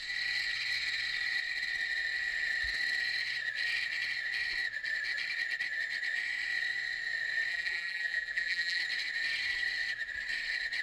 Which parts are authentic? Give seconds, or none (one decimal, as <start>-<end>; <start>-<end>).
0.0-7.5; 8.8-10.8